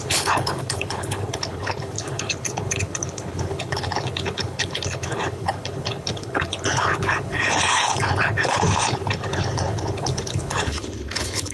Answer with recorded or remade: remade